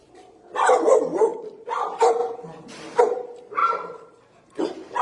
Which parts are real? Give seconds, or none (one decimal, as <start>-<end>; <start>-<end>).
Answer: 1.3-1.8; 2.2-3.0; 3.6-5.0